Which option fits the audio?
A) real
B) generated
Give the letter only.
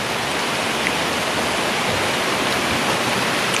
A